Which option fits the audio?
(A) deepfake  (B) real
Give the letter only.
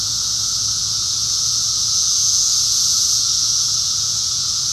A